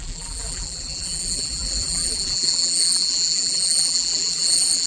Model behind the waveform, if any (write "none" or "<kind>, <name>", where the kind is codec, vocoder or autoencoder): vocoder, BigVGAN v2